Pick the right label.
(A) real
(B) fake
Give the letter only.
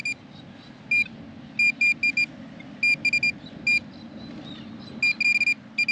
A